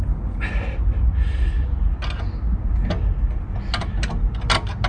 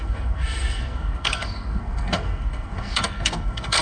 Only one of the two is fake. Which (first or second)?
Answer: second